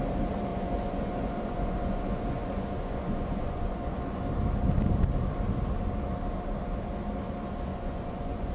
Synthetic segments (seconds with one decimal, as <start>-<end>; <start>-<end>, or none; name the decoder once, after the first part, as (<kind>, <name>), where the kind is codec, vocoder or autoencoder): 0.5-4.2 (vocoder, Vocos); 7.7-8.5